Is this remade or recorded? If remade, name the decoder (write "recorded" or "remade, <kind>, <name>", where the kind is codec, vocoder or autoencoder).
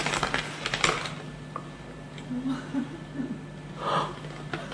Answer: recorded